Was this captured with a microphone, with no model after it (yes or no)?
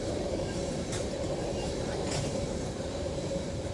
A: no